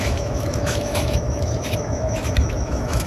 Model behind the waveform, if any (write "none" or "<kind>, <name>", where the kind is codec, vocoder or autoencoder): autoencoder, DAC-VAE